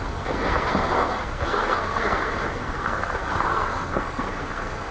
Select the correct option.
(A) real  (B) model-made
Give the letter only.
B